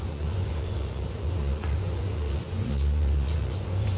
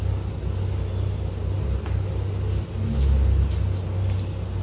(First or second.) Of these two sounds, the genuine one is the second